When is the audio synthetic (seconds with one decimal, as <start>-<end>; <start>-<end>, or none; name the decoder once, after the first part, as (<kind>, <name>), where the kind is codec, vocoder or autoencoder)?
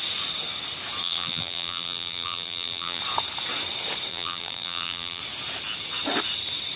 1.0-3.0 (vocoder, BigVGAN v2); 4.1-5.2